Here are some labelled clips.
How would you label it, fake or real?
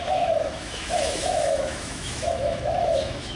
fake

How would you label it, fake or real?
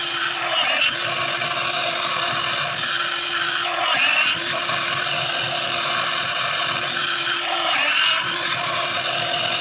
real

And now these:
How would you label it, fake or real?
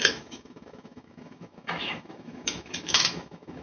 fake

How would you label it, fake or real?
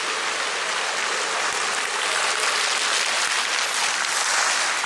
real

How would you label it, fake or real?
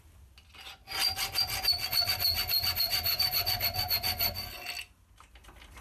real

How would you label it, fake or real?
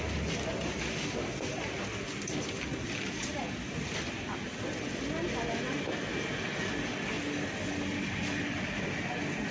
real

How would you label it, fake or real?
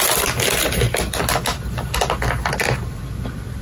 real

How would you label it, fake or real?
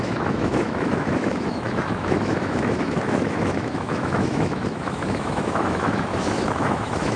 fake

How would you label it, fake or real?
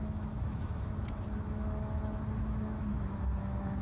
fake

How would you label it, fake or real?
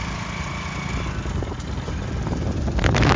real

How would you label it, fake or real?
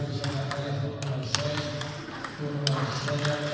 real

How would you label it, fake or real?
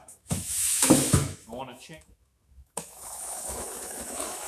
fake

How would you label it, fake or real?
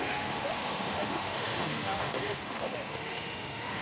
fake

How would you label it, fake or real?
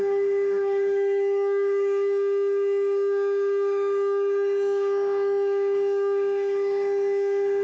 fake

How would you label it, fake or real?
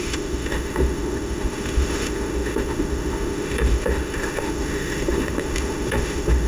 fake